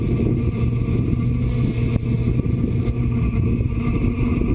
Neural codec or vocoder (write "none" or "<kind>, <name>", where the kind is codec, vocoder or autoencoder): none